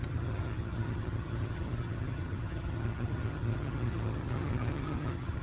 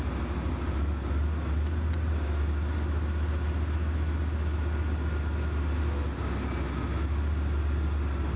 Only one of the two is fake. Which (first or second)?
first